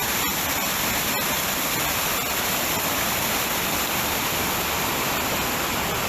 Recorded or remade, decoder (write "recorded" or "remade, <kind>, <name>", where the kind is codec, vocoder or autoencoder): recorded